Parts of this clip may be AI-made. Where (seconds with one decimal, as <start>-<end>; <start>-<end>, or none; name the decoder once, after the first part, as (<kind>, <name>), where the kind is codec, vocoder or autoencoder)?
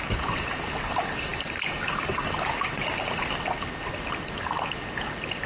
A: none